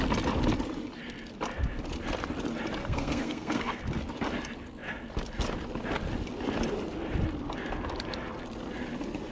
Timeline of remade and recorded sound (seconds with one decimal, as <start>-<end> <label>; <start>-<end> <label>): 0.0-2.8 recorded; 2.8-3.8 remade; 3.8-9.3 recorded